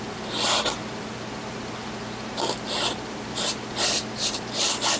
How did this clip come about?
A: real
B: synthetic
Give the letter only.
A